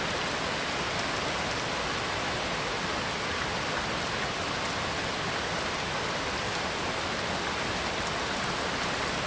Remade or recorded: recorded